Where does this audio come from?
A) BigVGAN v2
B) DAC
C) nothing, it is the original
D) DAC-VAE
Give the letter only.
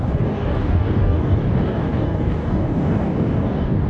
B